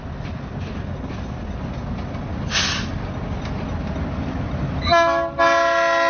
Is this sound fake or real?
real